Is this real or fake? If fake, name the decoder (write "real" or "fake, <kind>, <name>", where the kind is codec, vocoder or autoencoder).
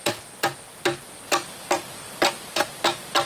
real